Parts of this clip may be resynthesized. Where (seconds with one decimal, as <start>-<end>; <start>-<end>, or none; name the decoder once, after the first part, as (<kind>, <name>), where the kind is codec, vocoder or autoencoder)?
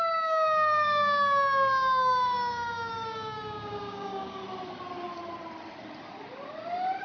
0.0-4.4 (codec, DAC)